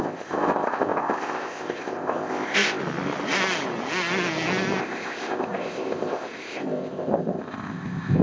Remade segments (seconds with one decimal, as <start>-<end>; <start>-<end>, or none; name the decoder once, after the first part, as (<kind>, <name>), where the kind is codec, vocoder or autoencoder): 0.0-2.8 (codec, ZipCodec); 4.8-8.2